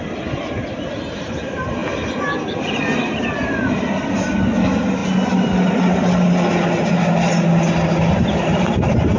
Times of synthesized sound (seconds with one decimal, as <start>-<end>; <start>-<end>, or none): 1.8-3.9